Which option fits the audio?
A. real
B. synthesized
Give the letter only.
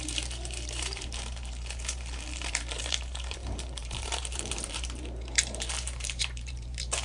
B